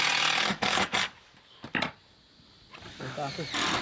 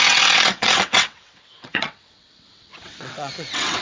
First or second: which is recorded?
first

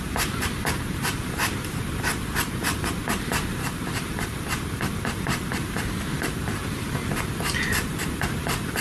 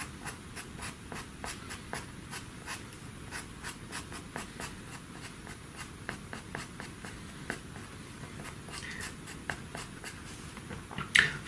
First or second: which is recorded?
second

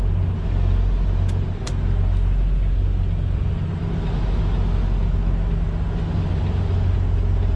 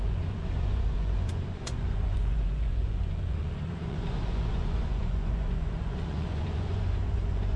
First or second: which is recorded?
first